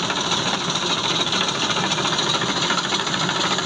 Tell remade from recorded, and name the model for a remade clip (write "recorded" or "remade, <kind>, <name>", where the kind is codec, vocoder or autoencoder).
recorded